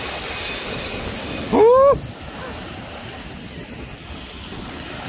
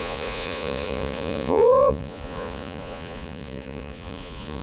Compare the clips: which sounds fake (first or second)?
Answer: second